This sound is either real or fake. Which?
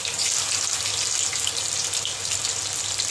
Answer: real